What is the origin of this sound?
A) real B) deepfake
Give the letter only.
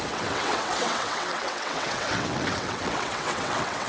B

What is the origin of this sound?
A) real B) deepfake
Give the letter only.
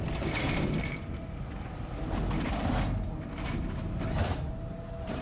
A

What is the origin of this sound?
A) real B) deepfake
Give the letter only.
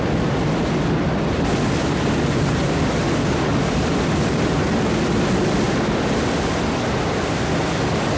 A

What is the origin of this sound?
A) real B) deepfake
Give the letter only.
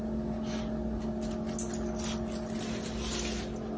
A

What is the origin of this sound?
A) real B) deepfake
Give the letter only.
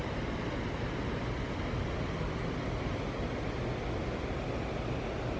A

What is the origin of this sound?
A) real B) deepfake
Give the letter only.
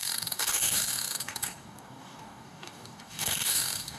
B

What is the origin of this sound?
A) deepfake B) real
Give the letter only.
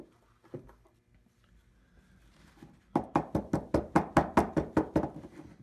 B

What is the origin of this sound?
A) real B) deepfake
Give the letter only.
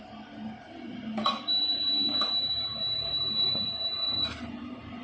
B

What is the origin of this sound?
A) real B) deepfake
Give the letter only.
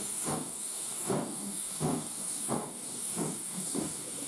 B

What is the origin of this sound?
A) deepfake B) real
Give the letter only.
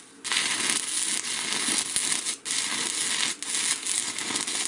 B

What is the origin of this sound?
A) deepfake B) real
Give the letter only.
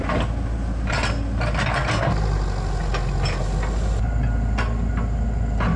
B